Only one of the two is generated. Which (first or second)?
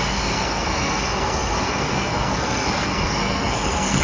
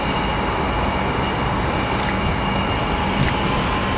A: first